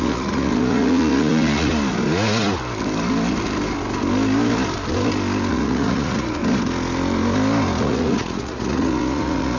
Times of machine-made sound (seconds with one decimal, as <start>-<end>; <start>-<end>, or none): 0.0-1.7; 5.5-6.4; 7.8-9.6